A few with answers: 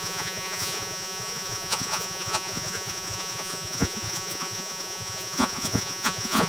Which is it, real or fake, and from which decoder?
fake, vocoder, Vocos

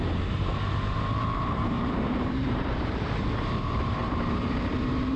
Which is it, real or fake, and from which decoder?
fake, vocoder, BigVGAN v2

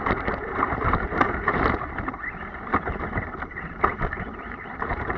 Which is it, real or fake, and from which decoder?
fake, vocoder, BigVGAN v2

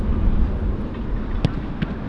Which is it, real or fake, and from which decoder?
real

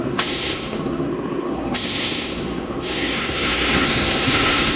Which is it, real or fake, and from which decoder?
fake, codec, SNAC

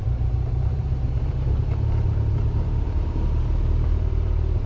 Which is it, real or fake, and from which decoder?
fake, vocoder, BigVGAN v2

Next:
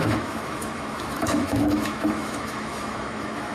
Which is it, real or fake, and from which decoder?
fake, autoencoder, DAC-VAE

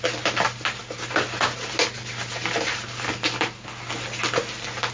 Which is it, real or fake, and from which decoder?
real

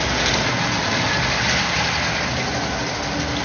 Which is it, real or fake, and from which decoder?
real